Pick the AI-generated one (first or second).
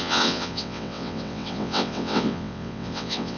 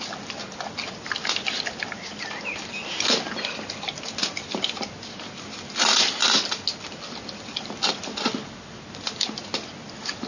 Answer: first